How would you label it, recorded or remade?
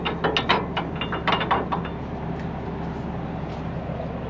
recorded